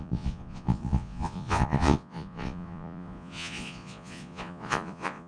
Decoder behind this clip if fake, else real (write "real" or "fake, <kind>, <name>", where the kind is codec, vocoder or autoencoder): fake, vocoder, Vocos